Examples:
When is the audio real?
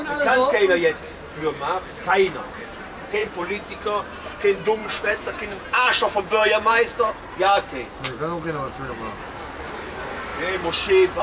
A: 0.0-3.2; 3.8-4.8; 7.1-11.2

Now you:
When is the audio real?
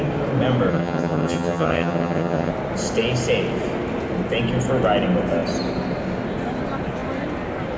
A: 0.0-0.7; 2.5-7.8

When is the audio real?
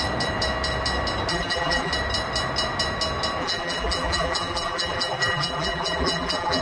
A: 0.0-1.3; 1.9-3.4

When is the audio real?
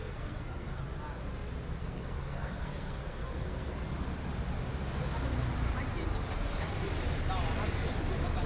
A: 0.8-1.8; 3.8-8.5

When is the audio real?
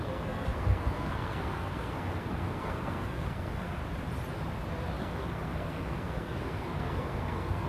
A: 3.8-5.0